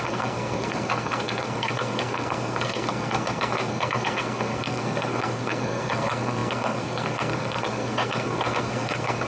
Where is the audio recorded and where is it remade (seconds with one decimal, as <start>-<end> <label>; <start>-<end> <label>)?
0.0-9.3 remade